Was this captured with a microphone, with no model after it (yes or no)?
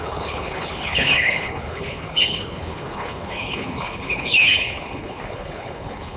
no